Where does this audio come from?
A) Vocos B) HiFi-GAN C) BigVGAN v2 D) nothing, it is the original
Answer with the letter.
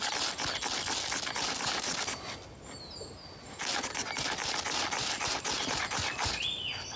D